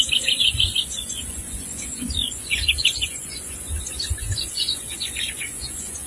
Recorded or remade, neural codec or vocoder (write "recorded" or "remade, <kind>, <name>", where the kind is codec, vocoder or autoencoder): remade, vocoder, Vocos